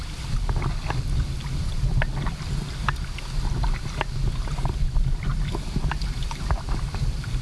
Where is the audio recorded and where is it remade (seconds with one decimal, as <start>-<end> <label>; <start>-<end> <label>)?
0.0-7.4 recorded